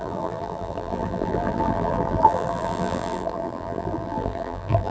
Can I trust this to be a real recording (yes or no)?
no